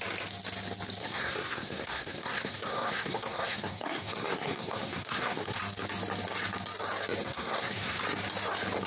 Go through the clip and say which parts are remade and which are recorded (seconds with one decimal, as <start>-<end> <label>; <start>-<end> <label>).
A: 0.0-1.0 recorded; 1.0-5.6 remade; 5.6-7.2 recorded; 7.2-8.0 remade; 8.0-8.9 recorded